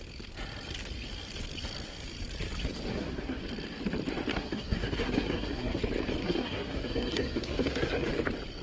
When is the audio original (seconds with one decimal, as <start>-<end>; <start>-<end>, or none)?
0.0-2.9; 3.4-4.3; 5.8-6.2; 8.1-8.6